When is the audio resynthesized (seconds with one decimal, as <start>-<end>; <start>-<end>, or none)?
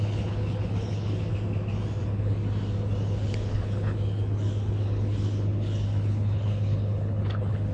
0.0-1.3; 2.0-2.4; 3.0-7.7